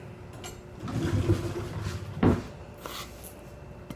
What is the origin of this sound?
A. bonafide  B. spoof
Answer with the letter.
A